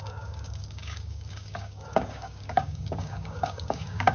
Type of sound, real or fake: fake